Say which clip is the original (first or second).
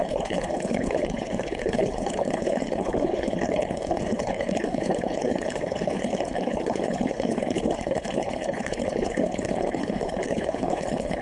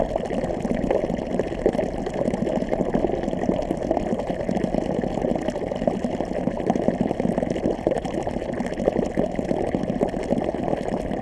second